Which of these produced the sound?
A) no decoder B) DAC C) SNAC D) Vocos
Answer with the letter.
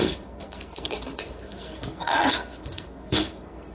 C